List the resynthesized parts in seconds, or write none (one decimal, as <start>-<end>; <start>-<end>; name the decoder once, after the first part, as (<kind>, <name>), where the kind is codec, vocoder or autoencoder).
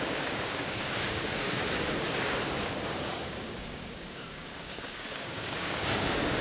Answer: 0.0-1.6 (codec, DAC); 2.1-6.4